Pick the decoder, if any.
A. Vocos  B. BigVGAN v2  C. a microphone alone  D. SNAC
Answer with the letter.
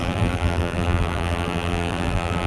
B